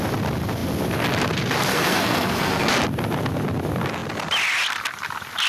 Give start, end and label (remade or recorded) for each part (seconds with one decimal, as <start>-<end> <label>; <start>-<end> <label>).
0.0-1.7 recorded; 1.7-2.7 remade; 2.7-5.5 recorded